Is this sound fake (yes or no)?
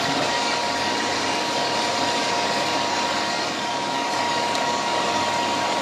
yes